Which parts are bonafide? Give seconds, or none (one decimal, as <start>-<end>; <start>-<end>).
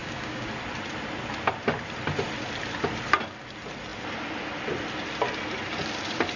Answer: 0.5-6.4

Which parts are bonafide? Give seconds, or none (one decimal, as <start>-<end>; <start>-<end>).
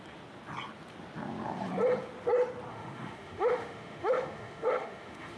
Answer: 0.0-2.7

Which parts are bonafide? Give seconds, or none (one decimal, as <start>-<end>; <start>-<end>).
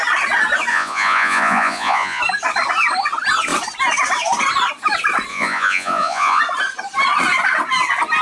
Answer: 0.0-0.7; 2.2-5.3; 6.4-8.2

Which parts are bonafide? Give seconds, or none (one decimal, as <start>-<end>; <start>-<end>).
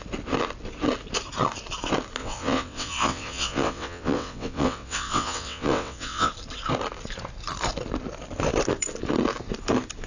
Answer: 0.0-2.2; 6.3-10.1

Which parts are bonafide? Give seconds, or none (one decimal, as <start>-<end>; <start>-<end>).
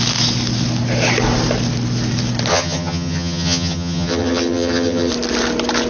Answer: 0.0-2.5; 5.1-5.9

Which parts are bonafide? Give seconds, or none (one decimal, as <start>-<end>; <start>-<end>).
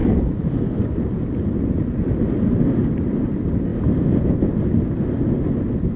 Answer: 0.0-6.0